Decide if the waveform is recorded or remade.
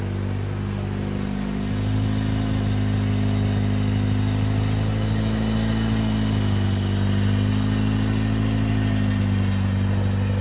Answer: recorded